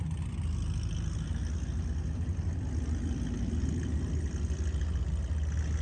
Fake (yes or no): no